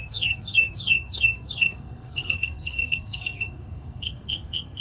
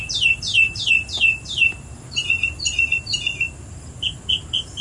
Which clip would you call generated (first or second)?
first